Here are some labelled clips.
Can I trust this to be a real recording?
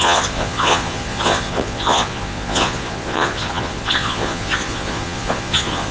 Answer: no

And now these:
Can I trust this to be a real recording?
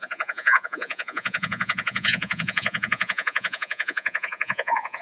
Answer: no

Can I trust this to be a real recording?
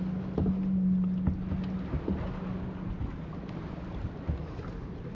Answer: yes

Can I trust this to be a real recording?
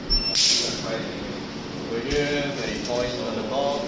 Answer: yes